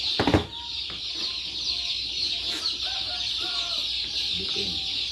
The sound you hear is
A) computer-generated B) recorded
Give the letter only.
A